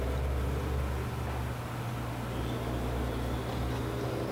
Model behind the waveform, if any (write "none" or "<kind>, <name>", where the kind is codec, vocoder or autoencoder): none